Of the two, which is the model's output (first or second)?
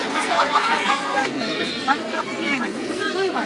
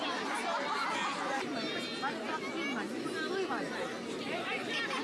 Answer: first